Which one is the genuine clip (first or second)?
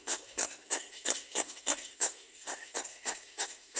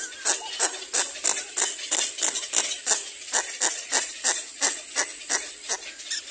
second